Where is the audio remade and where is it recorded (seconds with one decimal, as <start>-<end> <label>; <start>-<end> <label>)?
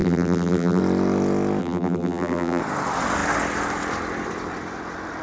0.0-0.8 remade; 0.8-1.6 recorded; 1.6-2.6 remade; 2.6-5.2 recorded